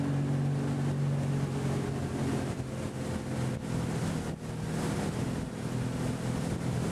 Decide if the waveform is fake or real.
real